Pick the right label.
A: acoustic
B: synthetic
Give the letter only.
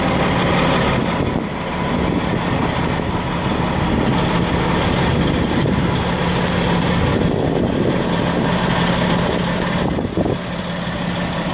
A